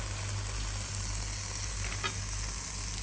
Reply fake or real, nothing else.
real